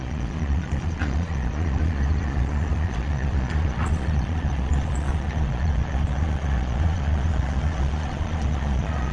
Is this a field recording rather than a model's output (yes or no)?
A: no